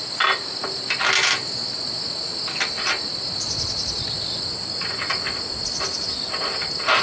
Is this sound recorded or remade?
recorded